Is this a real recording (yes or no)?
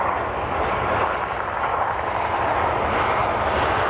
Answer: yes